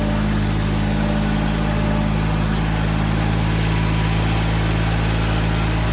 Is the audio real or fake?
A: real